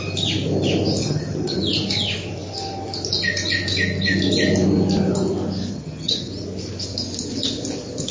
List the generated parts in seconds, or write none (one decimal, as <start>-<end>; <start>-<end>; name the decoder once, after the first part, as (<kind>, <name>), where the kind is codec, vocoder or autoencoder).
1.0-1.6 (vocoder, HiFi-GAN); 5.7-6.3